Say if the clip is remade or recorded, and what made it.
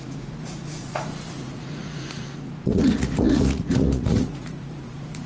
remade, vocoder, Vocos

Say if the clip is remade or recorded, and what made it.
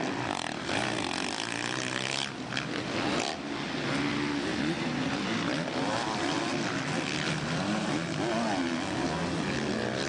recorded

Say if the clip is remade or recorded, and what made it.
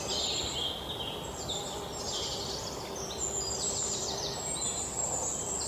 recorded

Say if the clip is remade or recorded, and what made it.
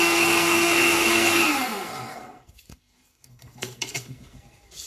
remade, codec, SNAC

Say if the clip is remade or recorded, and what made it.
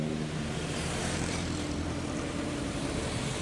remade, vocoder, BigVGAN v2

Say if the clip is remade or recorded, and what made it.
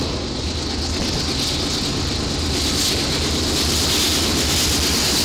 recorded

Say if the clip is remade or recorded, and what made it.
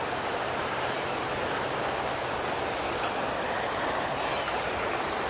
recorded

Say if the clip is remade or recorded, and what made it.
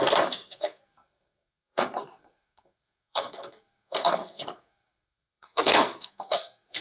remade, codec, SNAC